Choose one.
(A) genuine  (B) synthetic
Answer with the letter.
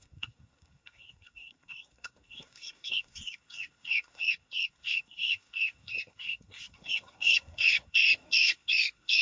B